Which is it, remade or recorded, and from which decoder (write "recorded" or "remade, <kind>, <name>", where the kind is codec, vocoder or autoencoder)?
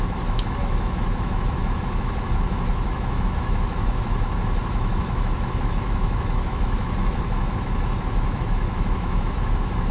remade, autoencoder, DAC-VAE